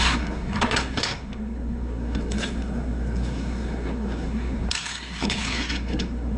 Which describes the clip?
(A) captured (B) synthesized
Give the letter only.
B